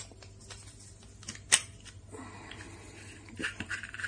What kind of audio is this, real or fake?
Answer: real